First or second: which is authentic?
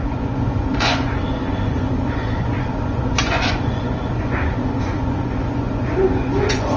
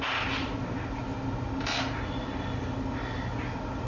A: second